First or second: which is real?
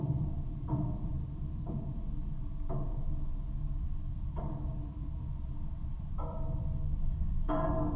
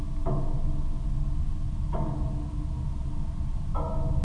second